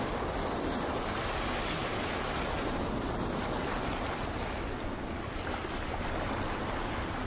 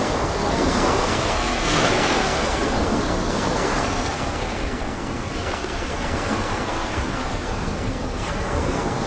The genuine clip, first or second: first